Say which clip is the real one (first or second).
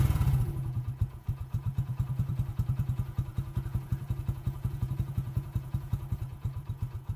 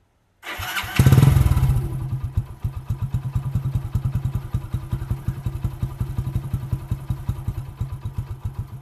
second